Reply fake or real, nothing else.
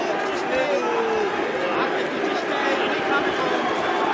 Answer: real